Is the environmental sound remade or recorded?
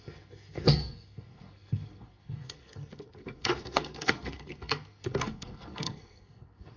remade